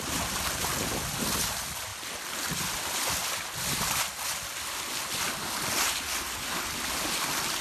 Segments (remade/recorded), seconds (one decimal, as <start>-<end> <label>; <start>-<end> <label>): 0.0-7.6 recorded